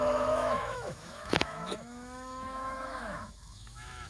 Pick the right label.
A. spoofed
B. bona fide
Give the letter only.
A